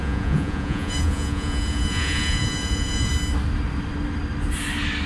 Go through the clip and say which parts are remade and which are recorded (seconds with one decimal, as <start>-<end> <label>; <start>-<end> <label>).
0.0-3.1 remade; 3.1-5.1 recorded